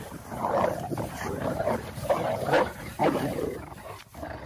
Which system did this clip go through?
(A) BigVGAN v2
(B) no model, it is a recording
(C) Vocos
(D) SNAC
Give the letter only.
A